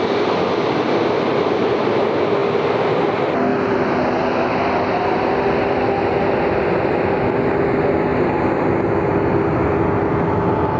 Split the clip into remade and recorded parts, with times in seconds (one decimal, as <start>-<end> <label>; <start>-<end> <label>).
0.0-3.5 recorded; 3.5-7.2 remade; 7.2-10.8 recorded